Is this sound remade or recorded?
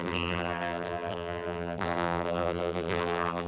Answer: remade